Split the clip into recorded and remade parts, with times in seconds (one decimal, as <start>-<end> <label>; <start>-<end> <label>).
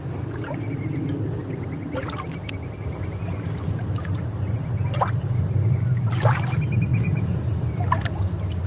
0.0-6.9 recorded; 6.9-7.4 remade; 7.4-8.7 recorded